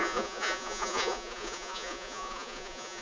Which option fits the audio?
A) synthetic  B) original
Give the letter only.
A